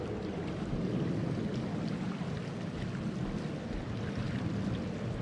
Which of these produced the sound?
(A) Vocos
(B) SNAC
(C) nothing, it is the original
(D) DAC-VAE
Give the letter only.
C